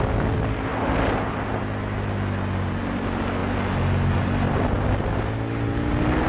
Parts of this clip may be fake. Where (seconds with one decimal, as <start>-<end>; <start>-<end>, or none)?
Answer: none